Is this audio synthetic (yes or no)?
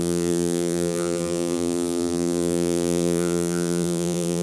yes